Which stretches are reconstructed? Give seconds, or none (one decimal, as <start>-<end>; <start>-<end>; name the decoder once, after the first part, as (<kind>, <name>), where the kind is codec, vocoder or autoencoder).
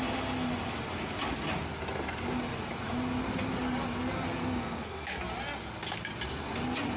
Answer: 4.4-5.2 (codec, SNAC)